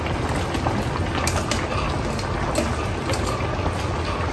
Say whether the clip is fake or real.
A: real